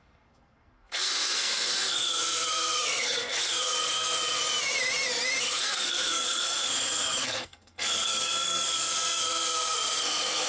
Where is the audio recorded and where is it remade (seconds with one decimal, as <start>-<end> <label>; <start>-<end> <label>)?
0.0-4.4 remade; 4.4-5.4 recorded; 5.4-10.5 remade